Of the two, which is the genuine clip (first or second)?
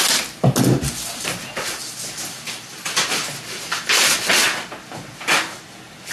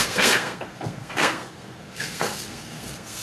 first